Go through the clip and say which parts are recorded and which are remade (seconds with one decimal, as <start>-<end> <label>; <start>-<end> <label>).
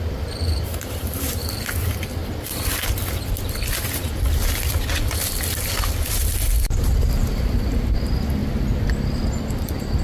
0.0-0.7 recorded; 0.7-1.4 remade; 1.4-2.2 recorded; 2.2-3.2 remade; 3.2-10.0 recorded